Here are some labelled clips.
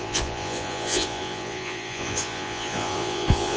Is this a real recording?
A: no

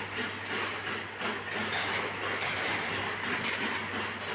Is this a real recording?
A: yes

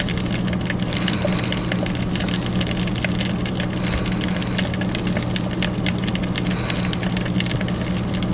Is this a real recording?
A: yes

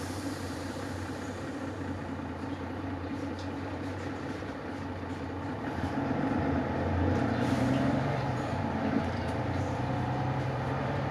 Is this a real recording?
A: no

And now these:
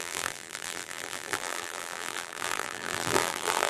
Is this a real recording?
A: no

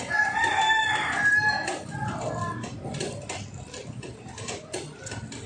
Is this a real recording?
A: yes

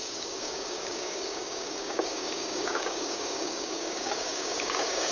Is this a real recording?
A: no